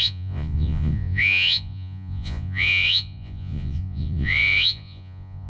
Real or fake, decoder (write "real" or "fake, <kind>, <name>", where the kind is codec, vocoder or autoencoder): fake, vocoder, Vocos